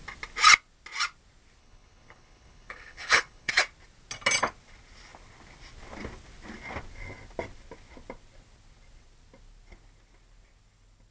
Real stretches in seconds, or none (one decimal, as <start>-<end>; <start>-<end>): 0.0-1.6; 3.5-11.1